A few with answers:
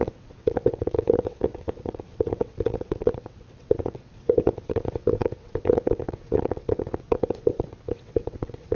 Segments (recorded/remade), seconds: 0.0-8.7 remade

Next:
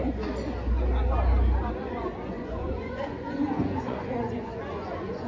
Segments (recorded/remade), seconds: 0.0-1.8 recorded; 1.8-5.3 remade

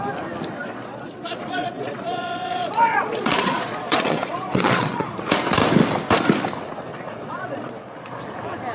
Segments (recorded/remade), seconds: 0.0-0.6 recorded; 0.6-5.1 remade; 5.1-6.9 recorded; 6.9-8.1 remade; 8.1-8.7 recorded

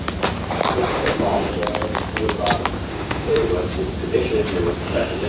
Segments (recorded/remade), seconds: 0.0-0.9 recorded; 0.9-1.5 remade; 1.5-2.9 recorded; 2.9-3.5 remade; 3.5-5.3 recorded

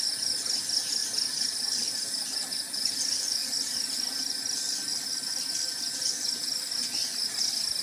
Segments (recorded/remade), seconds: 0.0-1.0 recorded; 1.0-1.9 remade; 1.9-3.4 recorded; 3.4-5.1 remade; 5.1-7.8 recorded

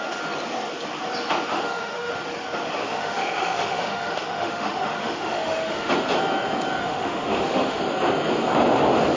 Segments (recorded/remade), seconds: 0.0-1.5 recorded; 1.5-2.1 remade; 2.1-2.8 recorded; 2.8-5.9 remade; 5.9-6.8 recorded; 6.8-7.8 remade; 7.8-9.2 recorded